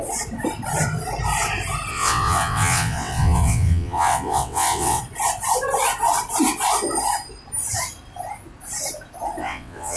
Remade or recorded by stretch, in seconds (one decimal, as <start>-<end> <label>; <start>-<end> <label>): 0.0-1.9 recorded; 1.9-5.0 remade; 5.0-9.4 recorded; 9.4-10.0 remade